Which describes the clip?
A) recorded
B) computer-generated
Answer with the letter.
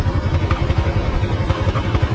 A